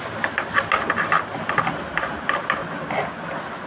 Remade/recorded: recorded